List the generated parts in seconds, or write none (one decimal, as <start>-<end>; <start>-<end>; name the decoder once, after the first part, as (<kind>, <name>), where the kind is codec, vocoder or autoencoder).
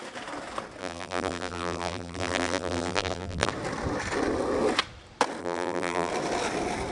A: 0.8-3.5 (vocoder, BigVGAN v2); 5.4-6.1